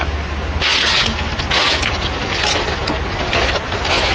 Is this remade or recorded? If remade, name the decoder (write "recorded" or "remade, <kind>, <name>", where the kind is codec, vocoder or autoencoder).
recorded